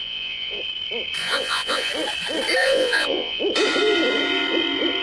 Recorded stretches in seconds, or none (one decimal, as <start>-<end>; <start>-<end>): 0.6-1.2; 1.9-2.6; 3.4-5.0